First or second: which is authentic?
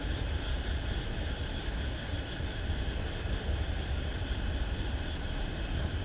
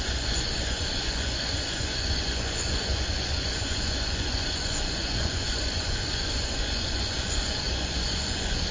first